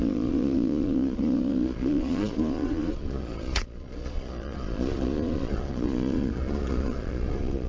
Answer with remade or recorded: remade